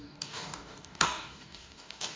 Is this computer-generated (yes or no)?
yes